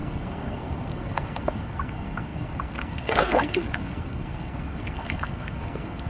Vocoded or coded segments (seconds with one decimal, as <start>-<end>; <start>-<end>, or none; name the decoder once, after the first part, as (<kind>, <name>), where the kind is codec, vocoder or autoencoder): 0.0-6.1 (codec, SNAC)